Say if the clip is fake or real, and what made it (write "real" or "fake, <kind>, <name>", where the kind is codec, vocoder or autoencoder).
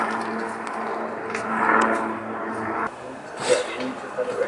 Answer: real